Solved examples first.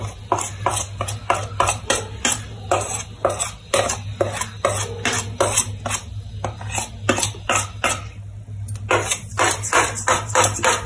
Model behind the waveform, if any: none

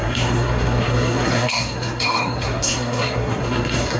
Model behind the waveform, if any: codec, SNAC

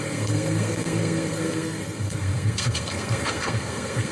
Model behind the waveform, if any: codec, SNAC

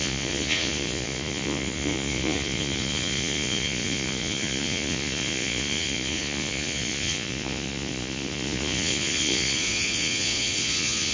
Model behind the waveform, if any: vocoder, Vocos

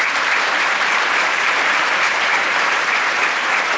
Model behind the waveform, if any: vocoder, BigVGAN v2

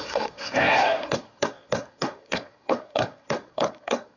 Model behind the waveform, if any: codec, SNAC